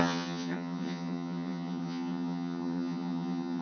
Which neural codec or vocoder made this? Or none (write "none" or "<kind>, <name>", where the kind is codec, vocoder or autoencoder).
vocoder, HiFi-GAN